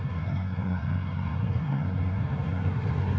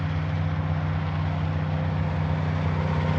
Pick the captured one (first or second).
second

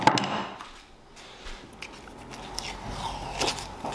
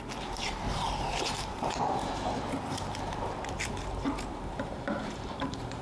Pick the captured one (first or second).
first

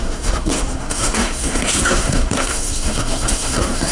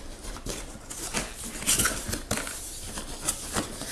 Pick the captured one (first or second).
second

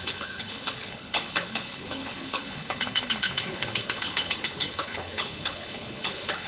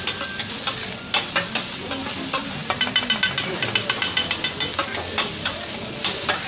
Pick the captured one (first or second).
second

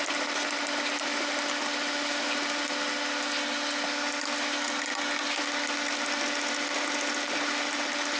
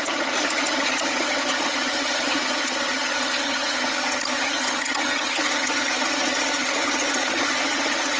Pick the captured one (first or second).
first